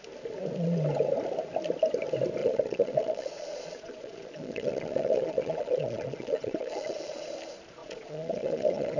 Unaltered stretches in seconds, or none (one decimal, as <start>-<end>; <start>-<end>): 0.0-2.4; 7.3-7.8